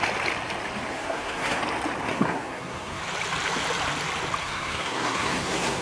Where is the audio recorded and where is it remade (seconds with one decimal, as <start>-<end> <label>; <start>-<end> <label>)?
0.0-0.9 recorded; 0.9-1.6 remade; 1.6-2.1 recorded; 2.1-3.0 remade; 3.0-4.4 recorded; 4.4-5.8 remade